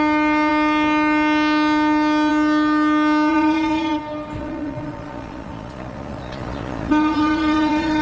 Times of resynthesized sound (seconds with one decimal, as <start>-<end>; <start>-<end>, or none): 3.3-4.0; 4.4-8.0